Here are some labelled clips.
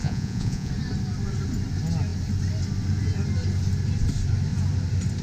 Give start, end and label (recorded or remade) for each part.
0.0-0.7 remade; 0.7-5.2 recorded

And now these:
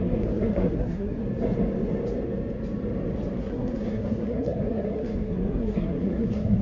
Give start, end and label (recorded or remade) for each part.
0.0-1.2 remade; 1.2-3.4 recorded; 3.4-6.6 remade

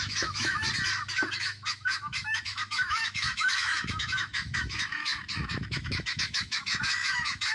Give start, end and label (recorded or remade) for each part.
0.0-0.6 remade; 0.6-1.1 recorded; 1.1-7.5 remade

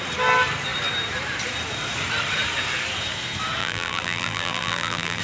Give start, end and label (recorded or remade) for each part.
0.0-3.6 recorded; 3.6-5.2 remade

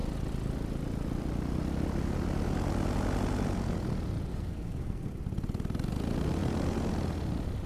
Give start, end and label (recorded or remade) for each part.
0.0-4.3 recorded; 4.3-5.1 remade; 5.1-7.7 recorded

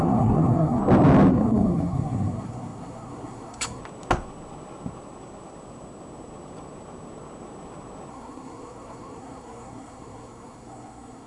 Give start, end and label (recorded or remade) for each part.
0.0-0.8 remade; 0.8-1.3 recorded; 1.3-3.8 remade; 3.8-8.1 recorded; 8.1-11.3 remade

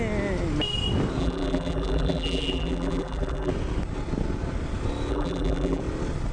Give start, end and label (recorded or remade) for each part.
0.0-1.2 recorded; 1.2-3.5 remade; 3.5-5.1 recorded; 5.1-5.8 remade; 5.8-6.3 recorded

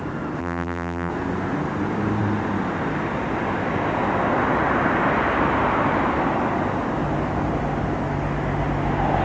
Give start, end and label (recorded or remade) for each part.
0.0-0.4 recorded; 0.4-1.1 remade; 1.1-9.2 recorded